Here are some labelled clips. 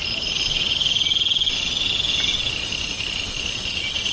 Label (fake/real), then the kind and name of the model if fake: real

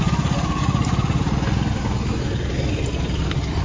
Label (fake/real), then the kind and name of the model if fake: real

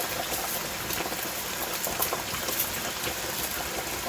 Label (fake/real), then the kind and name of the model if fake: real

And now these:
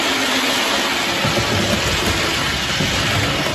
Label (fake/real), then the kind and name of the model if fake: real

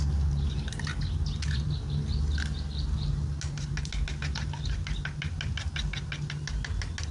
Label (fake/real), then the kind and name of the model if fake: real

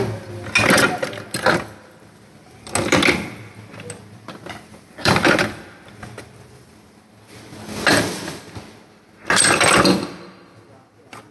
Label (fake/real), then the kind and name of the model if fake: real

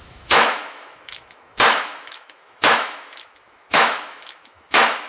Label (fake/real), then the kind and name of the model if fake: fake, autoencoder, DAC-VAE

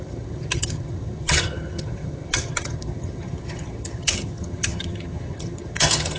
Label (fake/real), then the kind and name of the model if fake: fake, vocoder, HiFi-GAN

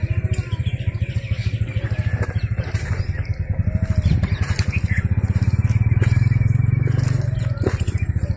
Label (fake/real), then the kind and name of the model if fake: real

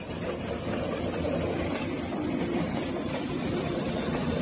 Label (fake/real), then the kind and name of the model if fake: real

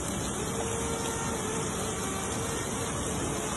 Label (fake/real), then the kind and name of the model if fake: real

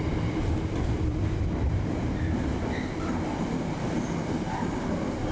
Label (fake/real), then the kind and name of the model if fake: real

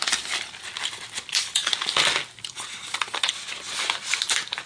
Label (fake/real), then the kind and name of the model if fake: real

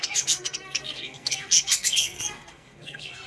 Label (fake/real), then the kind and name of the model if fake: fake, codec, SNAC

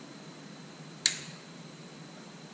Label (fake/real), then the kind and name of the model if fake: real